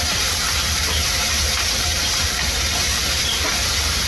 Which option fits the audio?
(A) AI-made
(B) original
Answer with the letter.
A